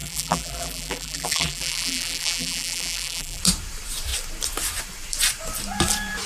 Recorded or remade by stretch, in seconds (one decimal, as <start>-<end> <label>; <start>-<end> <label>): 0.0-3.4 remade; 3.4-6.3 recorded